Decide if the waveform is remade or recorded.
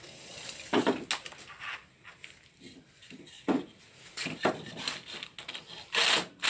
recorded